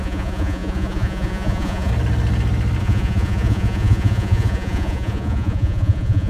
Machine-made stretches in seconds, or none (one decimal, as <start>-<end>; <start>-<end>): 0.0-1.9; 2.8-6.3